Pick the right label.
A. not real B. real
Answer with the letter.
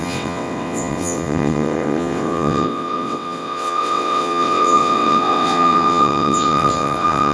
A